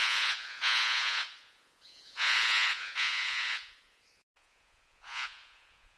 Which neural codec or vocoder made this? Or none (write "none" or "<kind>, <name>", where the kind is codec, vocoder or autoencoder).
vocoder, Vocos